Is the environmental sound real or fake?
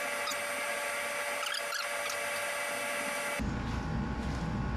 real